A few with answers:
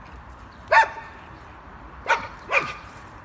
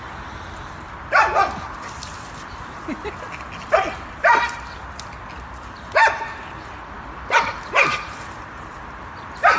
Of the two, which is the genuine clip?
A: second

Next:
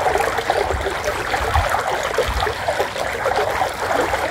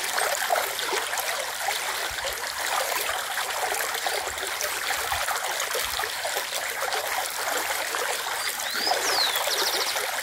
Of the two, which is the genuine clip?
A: first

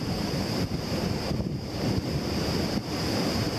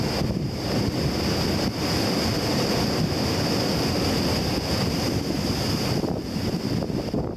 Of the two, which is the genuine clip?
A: second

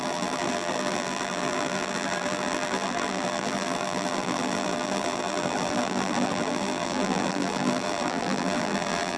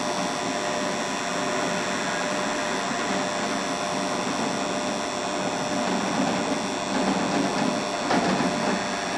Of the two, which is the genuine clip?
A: second